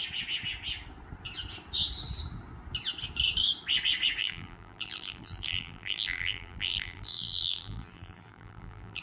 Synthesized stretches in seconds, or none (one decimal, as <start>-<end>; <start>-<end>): 4.2-9.0